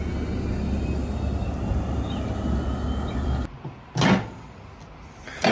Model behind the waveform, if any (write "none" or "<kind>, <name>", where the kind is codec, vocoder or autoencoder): none